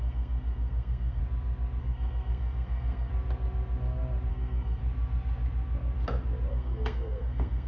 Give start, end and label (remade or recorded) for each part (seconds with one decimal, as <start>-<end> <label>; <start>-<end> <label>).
0.0-1.2 remade; 1.2-1.8 recorded; 1.8-3.1 remade; 3.1-4.3 recorded; 4.3-4.8 remade; 4.8-6.5 recorded; 6.5-7.7 remade